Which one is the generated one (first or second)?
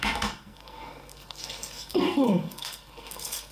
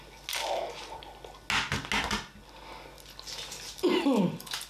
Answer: first